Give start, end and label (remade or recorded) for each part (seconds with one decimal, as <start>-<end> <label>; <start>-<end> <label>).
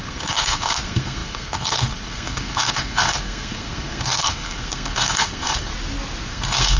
0.0-5.7 remade; 5.7-6.3 recorded; 6.3-6.8 remade